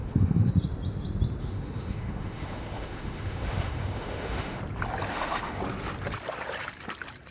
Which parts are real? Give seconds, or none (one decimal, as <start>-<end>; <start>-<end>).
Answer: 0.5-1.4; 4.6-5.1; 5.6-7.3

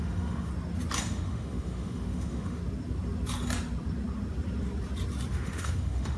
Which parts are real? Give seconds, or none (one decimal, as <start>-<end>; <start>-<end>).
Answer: 0.5-1.0; 2.6-5.3

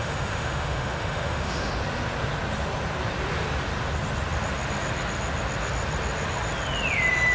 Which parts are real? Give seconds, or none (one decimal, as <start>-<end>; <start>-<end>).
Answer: 1.7-7.3

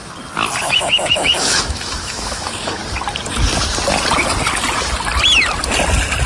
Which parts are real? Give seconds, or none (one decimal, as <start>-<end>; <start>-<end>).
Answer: 0.0-0.6; 2.8-6.3

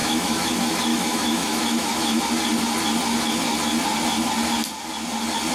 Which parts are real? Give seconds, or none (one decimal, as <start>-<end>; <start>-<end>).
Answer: 0.5-0.9; 2.2-5.5